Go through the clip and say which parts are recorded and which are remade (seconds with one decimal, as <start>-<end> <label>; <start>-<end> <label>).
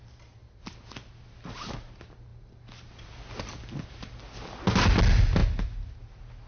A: 0.0-6.5 recorded